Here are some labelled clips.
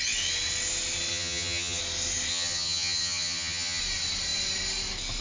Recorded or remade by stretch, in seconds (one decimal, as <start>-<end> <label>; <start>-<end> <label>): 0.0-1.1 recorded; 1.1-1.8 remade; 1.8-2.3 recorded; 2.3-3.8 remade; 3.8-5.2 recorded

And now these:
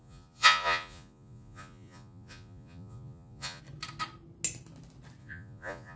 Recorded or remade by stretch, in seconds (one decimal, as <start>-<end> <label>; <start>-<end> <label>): 0.0-3.6 remade; 3.6-5.2 recorded; 5.2-6.0 remade

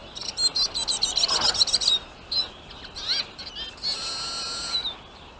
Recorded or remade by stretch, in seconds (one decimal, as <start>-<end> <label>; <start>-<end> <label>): 0.0-5.4 recorded